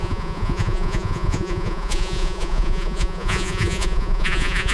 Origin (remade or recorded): remade